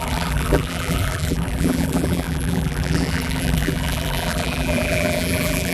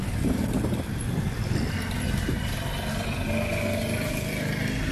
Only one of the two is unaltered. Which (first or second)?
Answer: second